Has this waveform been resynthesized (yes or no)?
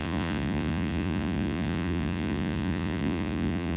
yes